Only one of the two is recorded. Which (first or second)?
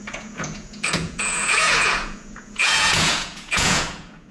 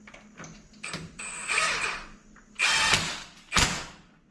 second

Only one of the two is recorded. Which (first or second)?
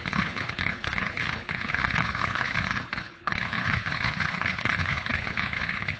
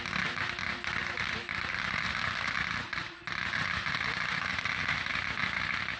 second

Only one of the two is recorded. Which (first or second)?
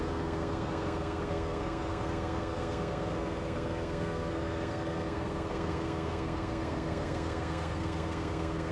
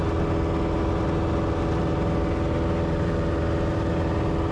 second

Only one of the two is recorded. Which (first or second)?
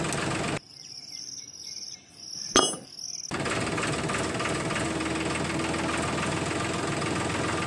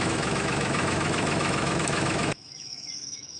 first